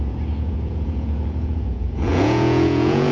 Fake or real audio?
fake